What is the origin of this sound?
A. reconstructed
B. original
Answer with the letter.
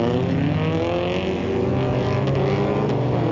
B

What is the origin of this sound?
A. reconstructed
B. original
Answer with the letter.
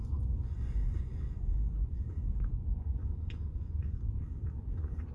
A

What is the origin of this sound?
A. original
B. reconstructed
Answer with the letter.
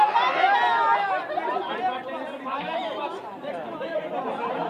A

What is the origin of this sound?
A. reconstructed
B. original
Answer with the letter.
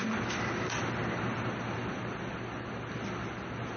B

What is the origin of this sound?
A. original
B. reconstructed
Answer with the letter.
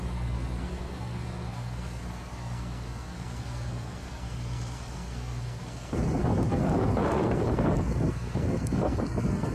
B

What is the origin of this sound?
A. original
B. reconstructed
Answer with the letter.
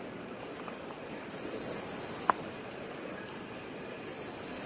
A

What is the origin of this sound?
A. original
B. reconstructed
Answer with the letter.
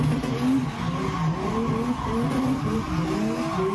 A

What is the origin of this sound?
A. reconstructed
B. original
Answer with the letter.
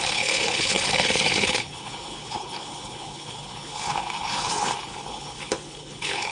A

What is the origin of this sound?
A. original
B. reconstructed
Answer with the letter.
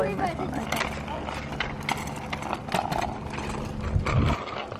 A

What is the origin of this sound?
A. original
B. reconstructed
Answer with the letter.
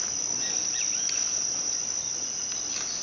A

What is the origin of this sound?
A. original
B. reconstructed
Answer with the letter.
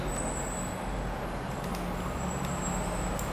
A